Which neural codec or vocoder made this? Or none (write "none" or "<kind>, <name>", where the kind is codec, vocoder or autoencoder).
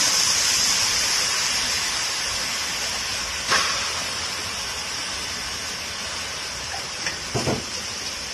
none